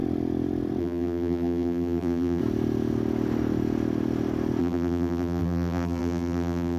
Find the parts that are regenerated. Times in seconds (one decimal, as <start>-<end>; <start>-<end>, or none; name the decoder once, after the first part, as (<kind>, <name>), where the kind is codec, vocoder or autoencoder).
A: 0.8-2.4 (vocoder, BigVGAN v2); 4.6-6.8